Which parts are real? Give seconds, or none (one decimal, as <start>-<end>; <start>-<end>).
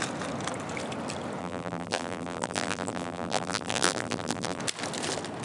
0.0-1.4; 4.6-5.4